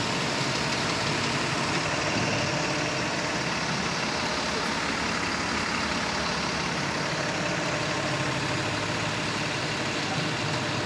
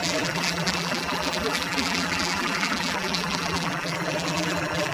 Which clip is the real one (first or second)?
first